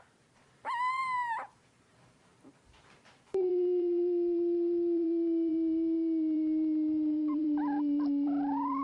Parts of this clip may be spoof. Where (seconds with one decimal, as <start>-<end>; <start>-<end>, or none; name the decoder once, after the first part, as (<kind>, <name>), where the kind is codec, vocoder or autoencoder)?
0.0-1.0 (vocoder, BigVGAN v2); 1.7-8.8